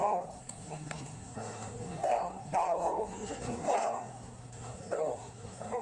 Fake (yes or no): yes